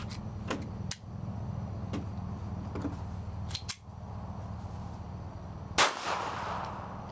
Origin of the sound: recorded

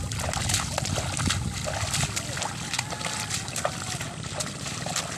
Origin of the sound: recorded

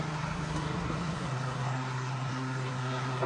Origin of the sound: remade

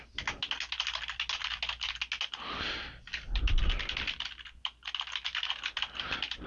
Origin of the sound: recorded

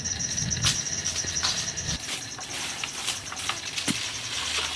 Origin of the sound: recorded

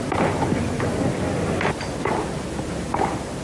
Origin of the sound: recorded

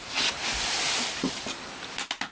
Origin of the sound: recorded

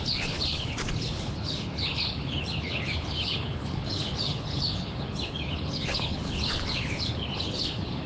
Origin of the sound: remade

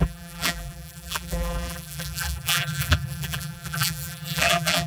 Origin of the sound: remade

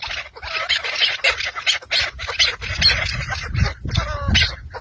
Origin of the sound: recorded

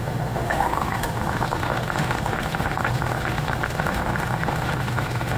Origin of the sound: remade